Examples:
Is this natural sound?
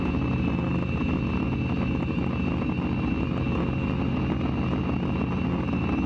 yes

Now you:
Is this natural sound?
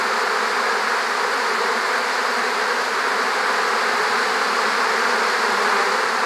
yes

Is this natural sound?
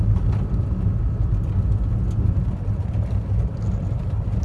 yes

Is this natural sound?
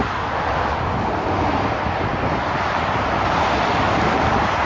yes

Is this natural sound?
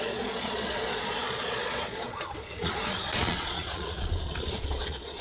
no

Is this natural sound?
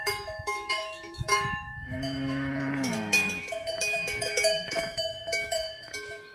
no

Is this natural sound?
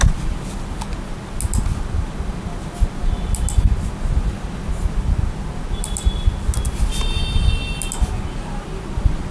yes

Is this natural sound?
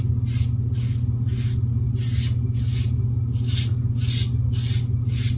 yes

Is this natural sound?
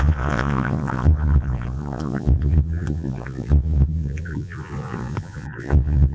no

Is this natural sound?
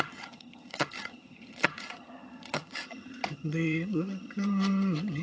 no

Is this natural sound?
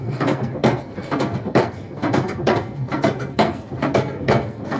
no